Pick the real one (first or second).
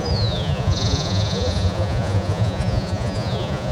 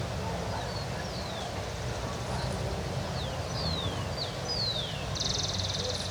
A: second